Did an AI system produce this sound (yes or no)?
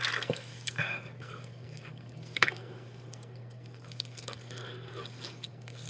yes